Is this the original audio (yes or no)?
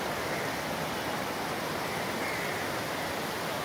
yes